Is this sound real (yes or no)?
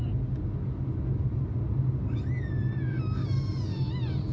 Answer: yes